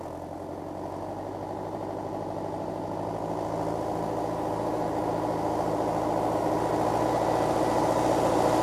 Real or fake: real